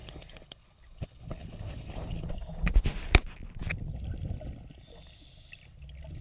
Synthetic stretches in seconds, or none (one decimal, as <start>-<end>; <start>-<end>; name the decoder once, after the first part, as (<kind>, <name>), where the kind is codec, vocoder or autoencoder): 0.0-2.3 (codec, HILCodec)